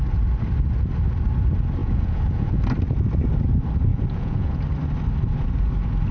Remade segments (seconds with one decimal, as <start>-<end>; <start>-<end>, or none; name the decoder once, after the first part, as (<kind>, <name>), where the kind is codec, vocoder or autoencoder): 1.8-2.6 (vocoder, Vocos); 3.9-4.6